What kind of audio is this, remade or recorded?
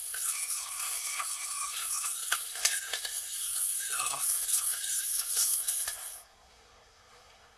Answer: remade